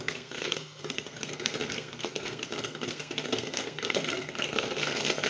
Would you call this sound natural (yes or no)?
no